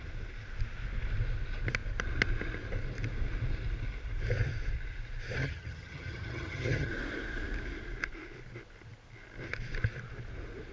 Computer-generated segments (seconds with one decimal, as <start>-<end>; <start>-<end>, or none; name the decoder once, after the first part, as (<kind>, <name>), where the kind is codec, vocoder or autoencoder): 5.4-6.9 (vocoder, HiFi-GAN)